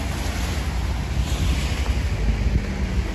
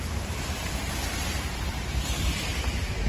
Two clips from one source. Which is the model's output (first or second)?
second